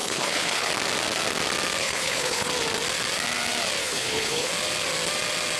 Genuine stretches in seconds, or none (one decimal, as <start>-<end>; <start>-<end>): 0.7-1.8; 2.5-3.8; 4.5-5.6